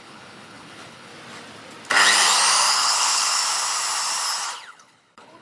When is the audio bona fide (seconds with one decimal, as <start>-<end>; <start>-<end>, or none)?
1.1-2.7; 3.4-4.7